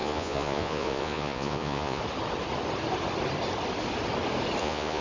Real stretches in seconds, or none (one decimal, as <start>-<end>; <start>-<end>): 2.0-4.6